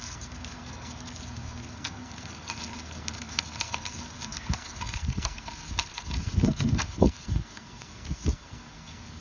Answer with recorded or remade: remade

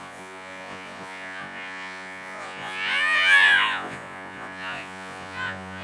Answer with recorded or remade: remade